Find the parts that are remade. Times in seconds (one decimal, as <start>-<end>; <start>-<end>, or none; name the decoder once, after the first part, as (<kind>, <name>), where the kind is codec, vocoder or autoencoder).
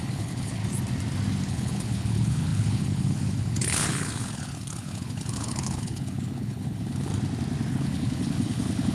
0.0-0.6 (codec, HILCodec); 1.5-7.1; 7.7-8.9